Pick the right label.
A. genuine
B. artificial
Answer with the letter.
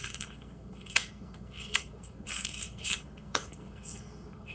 B